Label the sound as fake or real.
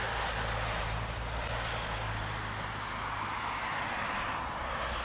real